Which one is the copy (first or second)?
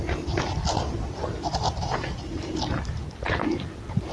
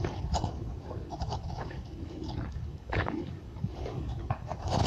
second